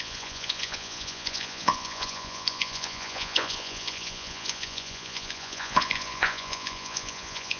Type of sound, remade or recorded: remade